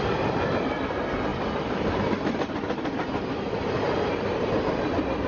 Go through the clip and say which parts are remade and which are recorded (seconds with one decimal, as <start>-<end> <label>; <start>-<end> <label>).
0.0-1.3 recorded; 1.3-2.0 remade; 2.0-5.3 recorded